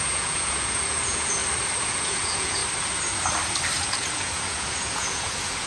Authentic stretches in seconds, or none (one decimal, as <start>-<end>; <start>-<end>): 1.4-1.9; 2.6-3.8